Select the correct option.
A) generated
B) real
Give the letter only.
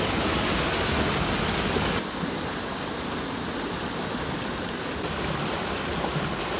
B